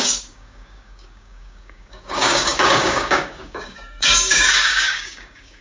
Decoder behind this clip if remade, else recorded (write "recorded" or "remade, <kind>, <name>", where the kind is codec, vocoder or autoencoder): remade, codec, DAC